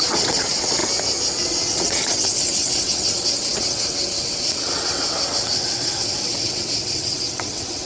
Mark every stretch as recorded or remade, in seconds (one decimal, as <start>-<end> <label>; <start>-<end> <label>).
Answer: 0.0-0.8 remade; 0.8-1.4 recorded; 1.4-7.8 remade

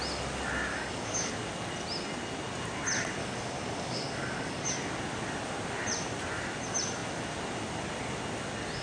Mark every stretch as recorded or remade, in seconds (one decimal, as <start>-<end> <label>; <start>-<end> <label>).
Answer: 0.0-0.7 recorded; 0.7-1.3 remade; 1.3-3.2 recorded; 3.2-4.7 remade; 4.7-8.8 recorded

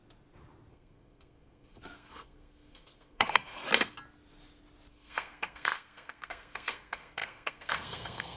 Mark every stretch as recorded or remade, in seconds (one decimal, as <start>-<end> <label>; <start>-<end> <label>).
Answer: 0.0-0.7 recorded; 0.7-3.6 remade; 3.6-4.9 recorded; 4.9-8.4 remade

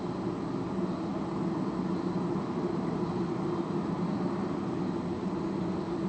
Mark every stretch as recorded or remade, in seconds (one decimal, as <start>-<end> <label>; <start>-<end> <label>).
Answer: 0.0-6.1 recorded

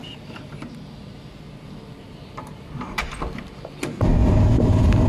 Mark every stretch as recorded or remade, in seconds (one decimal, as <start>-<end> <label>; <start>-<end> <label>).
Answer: 0.0-3.0 remade; 3.0-4.2 recorded; 4.2-5.1 remade

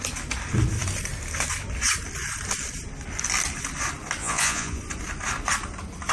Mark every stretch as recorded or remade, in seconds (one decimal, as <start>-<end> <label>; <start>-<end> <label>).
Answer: 0.0-4.2 recorded; 4.2-4.8 remade; 4.8-6.1 recorded

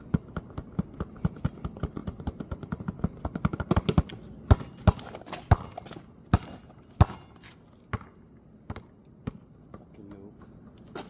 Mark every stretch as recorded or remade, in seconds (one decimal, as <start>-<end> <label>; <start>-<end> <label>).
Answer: 0.0-11.1 recorded